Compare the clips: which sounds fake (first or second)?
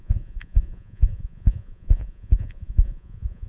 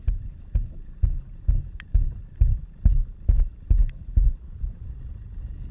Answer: first